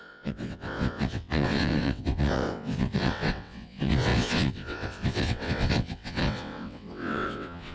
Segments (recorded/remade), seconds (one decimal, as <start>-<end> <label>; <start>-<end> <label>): 0.0-7.7 remade